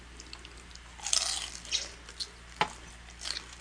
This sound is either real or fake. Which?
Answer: real